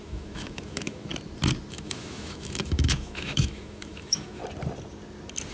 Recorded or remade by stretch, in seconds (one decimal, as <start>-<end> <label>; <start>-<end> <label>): 0.0-1.1 remade; 1.1-1.7 recorded; 1.7-4.4 remade; 4.4-5.5 recorded